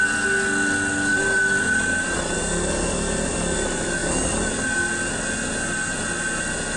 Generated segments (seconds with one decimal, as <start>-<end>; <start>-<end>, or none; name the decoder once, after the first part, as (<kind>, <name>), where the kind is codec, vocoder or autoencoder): 1.1-3.3 (vocoder, BigVGAN v2)